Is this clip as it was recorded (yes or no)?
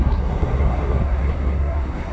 no